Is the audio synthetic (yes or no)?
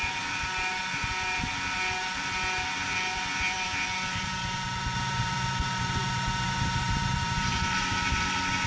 yes